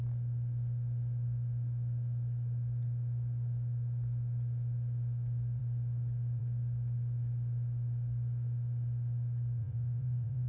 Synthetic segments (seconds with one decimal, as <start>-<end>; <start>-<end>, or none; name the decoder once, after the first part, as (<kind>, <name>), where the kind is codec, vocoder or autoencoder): 9.6-10.5 (vocoder, Vocos)